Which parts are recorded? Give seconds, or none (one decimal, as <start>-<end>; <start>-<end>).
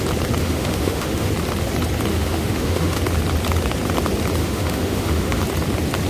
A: 0.0-0.4; 1.3-2.1; 3.0-4.4; 5.4-6.1